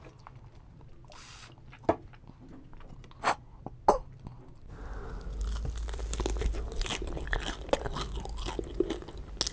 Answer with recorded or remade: recorded